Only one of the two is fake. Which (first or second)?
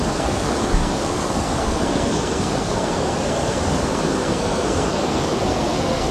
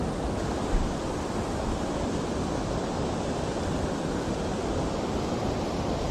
first